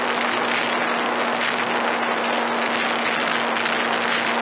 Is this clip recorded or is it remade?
recorded